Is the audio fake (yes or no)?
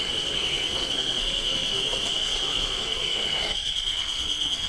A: yes